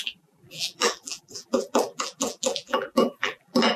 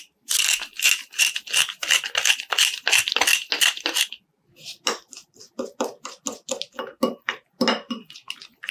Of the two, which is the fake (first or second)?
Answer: first